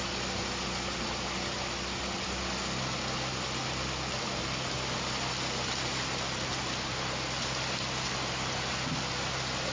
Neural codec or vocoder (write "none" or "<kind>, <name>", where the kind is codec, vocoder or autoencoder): none